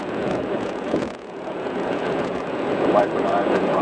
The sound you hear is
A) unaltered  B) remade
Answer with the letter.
B